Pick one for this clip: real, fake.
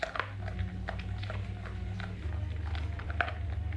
real